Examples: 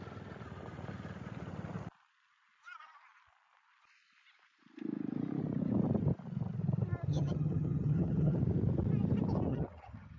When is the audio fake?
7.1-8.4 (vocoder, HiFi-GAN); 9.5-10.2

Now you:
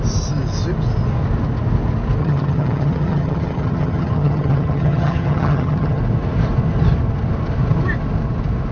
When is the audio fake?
2.2-6.0 (vocoder, HiFi-GAN)

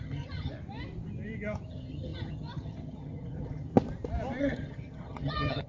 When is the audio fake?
0.0-0.5 (vocoder, HiFi-GAN); 1.7-3.7; 4.4-5.7

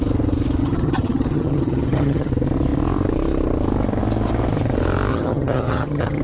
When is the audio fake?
0.6-2.3 (vocoder, HiFi-GAN); 5.1-6.2

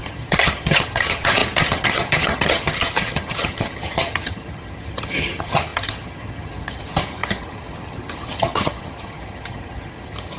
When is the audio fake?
0.0-10.4 (vocoder, HiFi-GAN)